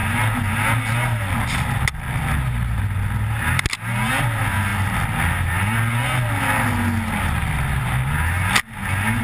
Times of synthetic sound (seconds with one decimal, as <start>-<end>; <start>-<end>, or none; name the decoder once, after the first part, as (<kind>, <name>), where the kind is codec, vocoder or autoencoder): none